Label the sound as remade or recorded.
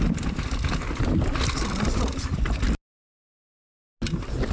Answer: recorded